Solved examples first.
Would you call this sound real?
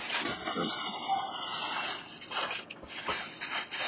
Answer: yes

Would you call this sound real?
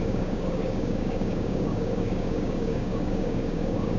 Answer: no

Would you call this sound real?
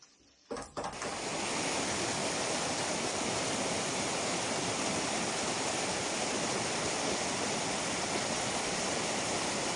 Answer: yes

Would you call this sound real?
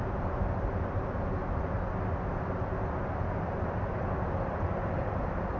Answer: yes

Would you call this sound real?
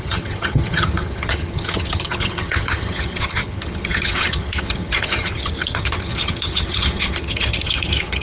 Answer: no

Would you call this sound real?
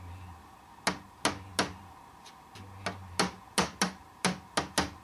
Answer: yes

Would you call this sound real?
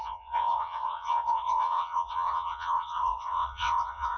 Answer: no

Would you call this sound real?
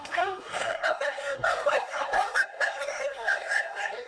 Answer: no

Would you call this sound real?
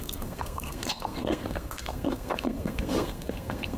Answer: no